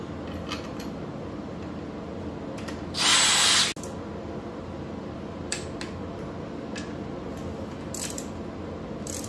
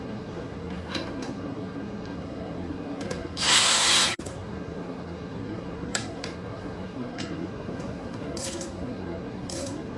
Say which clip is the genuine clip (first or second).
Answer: first